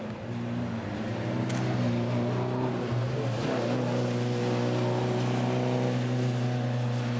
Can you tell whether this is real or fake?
real